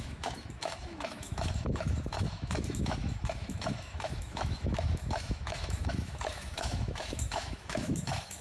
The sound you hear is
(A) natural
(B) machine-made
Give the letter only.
B